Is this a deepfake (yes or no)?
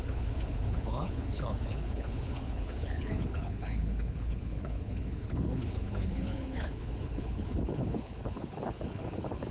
yes